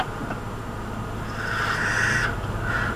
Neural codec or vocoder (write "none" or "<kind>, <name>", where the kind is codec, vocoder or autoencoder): none